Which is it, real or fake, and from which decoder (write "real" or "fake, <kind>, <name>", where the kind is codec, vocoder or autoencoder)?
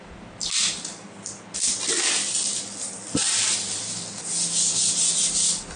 real